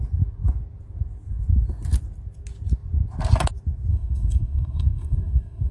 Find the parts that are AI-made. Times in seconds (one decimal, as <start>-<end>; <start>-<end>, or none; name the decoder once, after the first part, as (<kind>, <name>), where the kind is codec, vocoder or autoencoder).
3.9-5.7 (codec, SNAC)